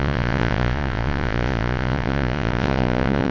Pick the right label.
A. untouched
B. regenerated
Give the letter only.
B